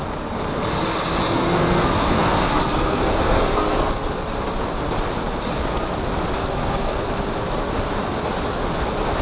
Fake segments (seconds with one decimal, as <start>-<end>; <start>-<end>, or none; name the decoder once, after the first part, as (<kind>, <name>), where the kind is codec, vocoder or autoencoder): 1.2-3.9 (codec, SNAC); 6.4-7.1